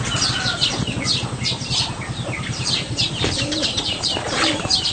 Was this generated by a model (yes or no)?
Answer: yes